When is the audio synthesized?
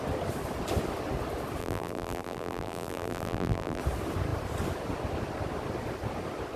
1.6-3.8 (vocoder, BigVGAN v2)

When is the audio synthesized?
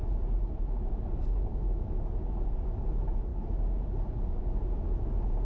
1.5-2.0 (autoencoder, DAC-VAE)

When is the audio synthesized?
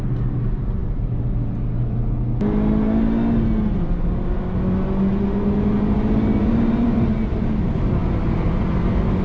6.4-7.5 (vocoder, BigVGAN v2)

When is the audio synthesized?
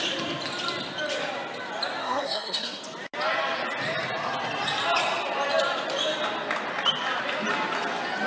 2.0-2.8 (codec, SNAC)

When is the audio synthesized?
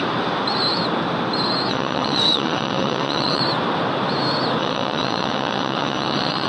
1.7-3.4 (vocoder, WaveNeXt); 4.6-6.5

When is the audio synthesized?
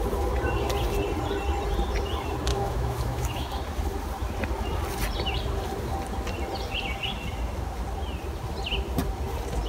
2.5-3.5 (autoencoder, DAC-VAE)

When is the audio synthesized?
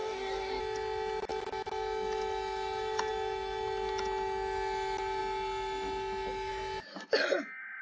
0.0-0.6 (codec, DAC)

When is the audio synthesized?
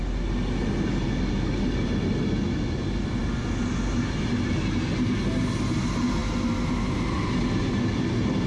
none